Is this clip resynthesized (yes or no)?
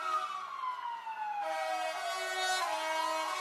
no